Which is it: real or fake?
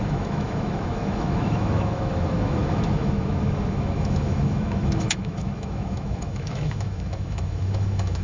fake